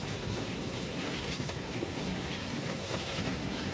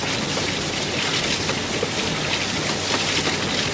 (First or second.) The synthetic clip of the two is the first